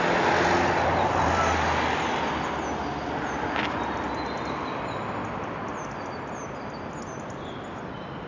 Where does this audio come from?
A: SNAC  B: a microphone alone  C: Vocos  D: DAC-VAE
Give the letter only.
B